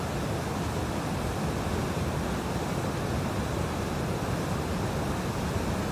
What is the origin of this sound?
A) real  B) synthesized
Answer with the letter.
A